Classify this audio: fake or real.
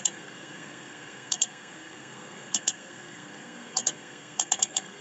fake